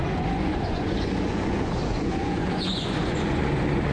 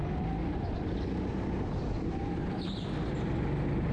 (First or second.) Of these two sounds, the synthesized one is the first